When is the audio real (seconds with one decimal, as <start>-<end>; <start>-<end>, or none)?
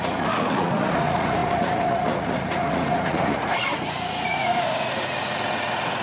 none